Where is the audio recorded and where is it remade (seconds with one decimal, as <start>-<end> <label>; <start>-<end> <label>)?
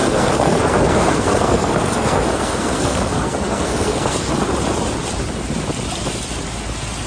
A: 0.0-4.3 remade; 4.3-7.1 recorded